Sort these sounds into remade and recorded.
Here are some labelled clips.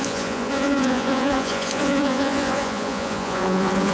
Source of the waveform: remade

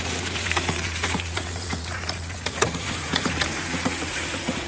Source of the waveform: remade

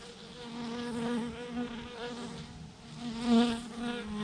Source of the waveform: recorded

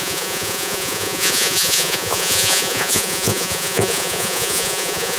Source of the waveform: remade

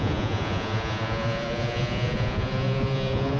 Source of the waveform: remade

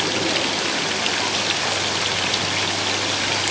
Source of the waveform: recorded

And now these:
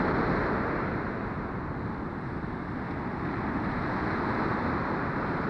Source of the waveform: recorded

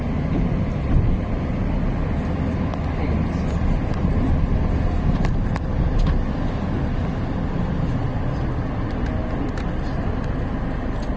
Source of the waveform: recorded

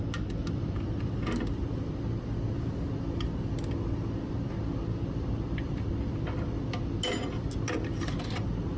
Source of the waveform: recorded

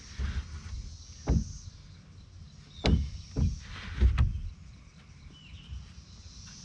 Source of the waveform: recorded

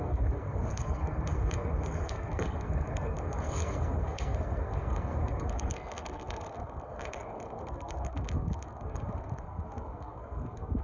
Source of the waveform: remade